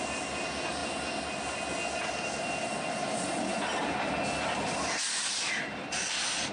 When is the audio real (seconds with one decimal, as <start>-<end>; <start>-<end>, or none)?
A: 0.0-6.5